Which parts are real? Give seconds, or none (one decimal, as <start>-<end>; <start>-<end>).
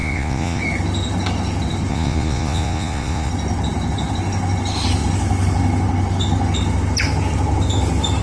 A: 0.6-1.9; 3.3-8.2